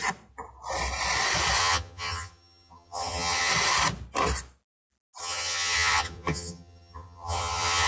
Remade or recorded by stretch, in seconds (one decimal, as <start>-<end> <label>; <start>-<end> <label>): 0.0-1.6 recorded; 1.6-3.5 remade; 3.5-5.2 recorded; 5.2-7.9 remade